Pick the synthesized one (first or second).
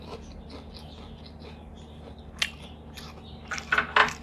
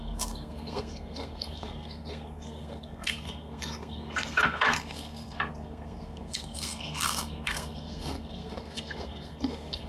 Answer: second